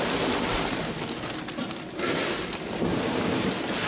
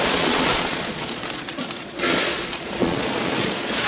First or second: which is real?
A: first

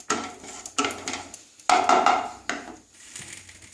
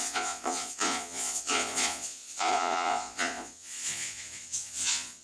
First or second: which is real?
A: first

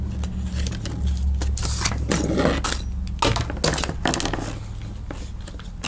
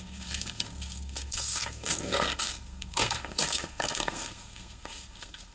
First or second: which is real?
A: first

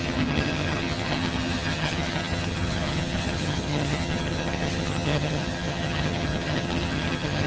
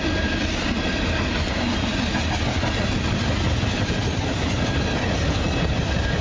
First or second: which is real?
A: second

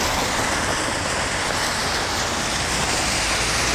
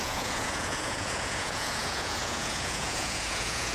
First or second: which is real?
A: first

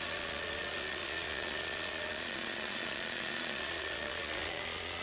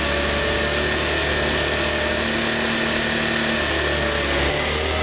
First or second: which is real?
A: second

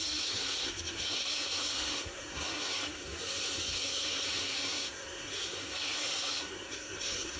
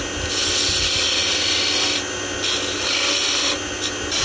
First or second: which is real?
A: second